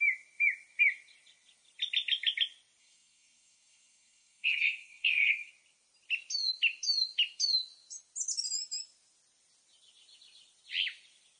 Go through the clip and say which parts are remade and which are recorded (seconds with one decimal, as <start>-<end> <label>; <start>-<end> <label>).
0.0-2.8 recorded; 2.8-5.5 remade; 5.5-11.4 recorded